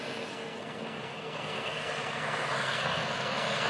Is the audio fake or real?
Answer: fake